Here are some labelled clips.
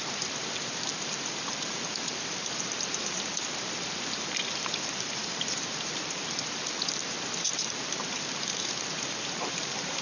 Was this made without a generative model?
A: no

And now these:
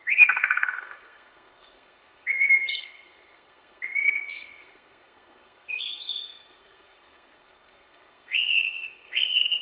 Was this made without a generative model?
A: no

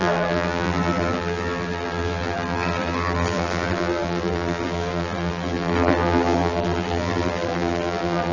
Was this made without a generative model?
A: no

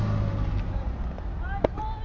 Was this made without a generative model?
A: yes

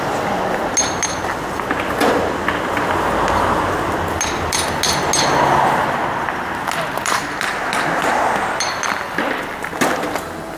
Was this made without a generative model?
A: yes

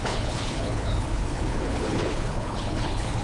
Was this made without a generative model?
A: no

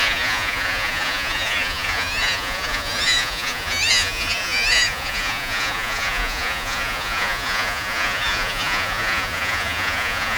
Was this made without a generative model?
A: no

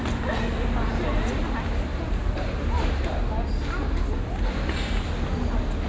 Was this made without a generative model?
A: yes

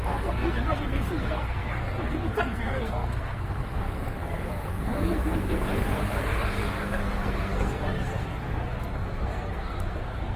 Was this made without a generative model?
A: no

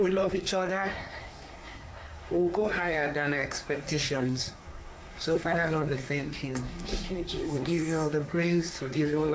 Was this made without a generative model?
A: no